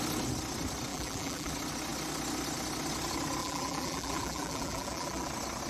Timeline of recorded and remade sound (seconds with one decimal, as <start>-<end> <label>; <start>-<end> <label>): 0.0-0.9 recorded; 0.9-1.5 remade; 1.5-3.4 recorded; 3.4-5.3 remade; 5.3-5.7 recorded